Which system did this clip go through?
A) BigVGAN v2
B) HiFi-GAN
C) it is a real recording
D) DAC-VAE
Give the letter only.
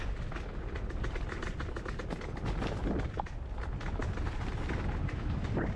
C